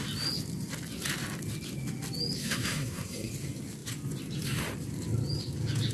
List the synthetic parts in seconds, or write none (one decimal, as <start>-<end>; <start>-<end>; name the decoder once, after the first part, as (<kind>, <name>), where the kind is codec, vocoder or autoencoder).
2.4-3.3 (codec, SNAC)